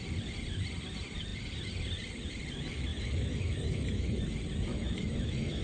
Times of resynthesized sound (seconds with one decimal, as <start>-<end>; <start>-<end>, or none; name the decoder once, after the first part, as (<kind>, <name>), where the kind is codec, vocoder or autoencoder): 2.9-4.2 (autoencoder, DAC-VAE); 4.7-5.6